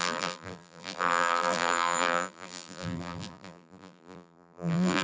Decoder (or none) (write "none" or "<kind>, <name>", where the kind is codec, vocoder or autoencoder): vocoder, BigVGAN v2